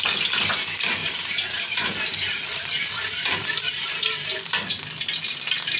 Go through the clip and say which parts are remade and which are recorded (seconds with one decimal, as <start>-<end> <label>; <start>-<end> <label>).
0.0-1.0 recorded; 1.0-4.5 remade; 4.5-5.8 recorded